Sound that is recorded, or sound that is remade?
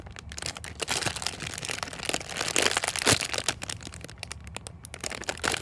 recorded